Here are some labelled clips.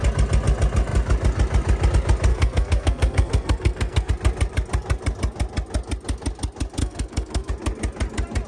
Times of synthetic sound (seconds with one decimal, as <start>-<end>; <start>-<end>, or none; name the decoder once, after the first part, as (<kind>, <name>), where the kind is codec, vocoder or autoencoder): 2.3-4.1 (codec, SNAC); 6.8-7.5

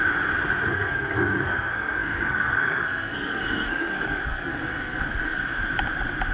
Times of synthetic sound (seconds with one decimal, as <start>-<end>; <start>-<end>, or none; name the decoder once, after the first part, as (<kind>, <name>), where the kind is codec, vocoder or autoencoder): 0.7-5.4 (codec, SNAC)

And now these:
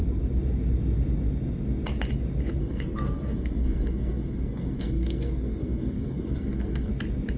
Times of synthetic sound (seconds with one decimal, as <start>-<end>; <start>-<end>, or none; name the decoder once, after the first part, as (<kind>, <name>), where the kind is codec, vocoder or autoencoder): 2.6-6.9 (codec, SNAC)

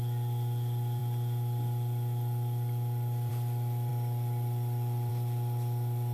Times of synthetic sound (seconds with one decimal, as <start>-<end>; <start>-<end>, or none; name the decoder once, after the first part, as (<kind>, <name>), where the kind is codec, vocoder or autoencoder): none